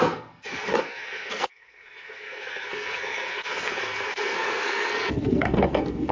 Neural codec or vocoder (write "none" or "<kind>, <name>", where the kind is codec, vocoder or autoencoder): codec, SNAC